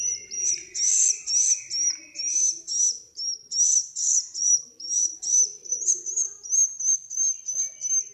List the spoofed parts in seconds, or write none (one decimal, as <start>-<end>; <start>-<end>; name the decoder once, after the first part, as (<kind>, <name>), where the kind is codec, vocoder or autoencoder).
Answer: 3.8-5.2 (vocoder, BigVGAN v2)